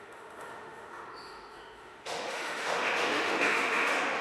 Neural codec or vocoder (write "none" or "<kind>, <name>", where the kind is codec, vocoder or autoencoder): autoencoder, DAC-VAE